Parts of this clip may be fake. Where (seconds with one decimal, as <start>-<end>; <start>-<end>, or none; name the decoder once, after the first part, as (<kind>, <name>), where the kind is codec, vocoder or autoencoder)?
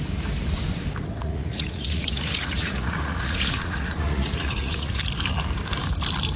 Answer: 1.2-5.0 (vocoder, Vocos)